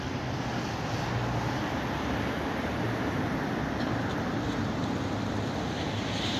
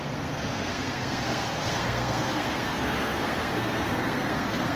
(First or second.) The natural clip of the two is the first